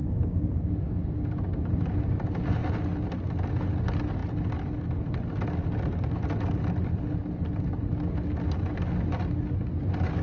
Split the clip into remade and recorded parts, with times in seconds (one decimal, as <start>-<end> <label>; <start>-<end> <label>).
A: 0.0-1.3 remade; 1.3-10.2 recorded